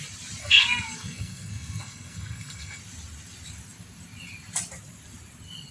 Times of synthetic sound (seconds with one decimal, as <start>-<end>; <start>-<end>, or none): 0.4-2.8